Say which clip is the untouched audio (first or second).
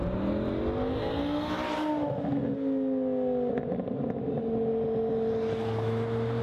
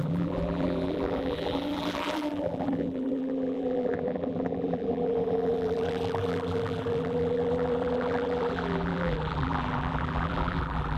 first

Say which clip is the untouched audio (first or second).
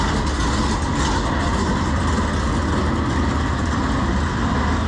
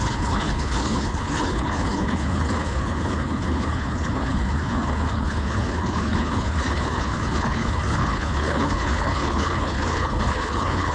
first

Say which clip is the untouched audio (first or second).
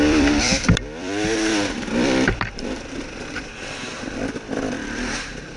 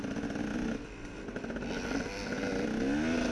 second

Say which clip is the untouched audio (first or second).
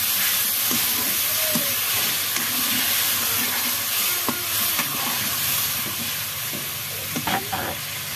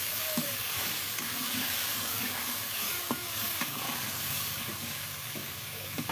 first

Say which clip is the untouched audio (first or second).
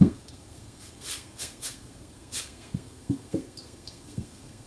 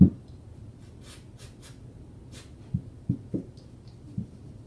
second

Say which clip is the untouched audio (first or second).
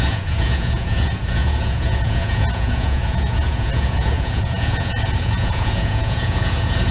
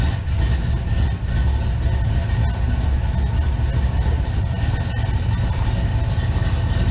second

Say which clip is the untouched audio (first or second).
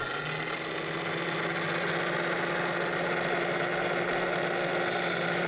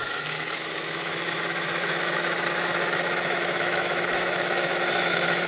first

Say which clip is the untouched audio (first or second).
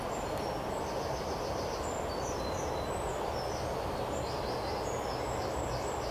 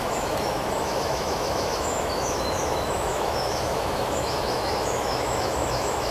first